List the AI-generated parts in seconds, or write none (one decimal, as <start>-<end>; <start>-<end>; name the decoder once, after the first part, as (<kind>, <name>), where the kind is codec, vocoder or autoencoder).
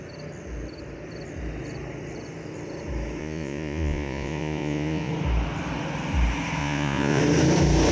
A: 3.2-5.1 (vocoder, Vocos); 6.6-7.2